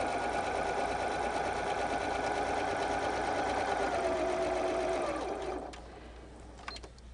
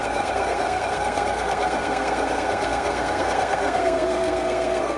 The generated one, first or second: second